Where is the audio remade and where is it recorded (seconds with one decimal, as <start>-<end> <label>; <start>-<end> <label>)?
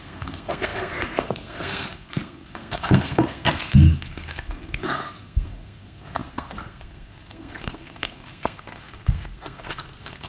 0.0-10.3 remade